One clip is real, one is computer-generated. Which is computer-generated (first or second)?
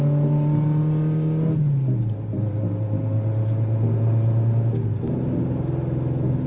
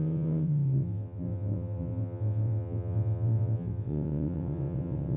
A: second